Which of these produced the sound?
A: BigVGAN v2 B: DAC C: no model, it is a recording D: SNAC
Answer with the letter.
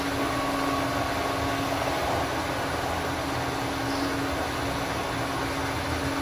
C